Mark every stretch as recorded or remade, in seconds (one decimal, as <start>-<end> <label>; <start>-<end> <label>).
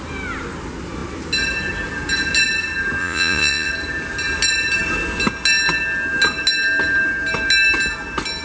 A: 0.0-3.0 recorded; 3.0-3.7 remade; 3.7-8.4 recorded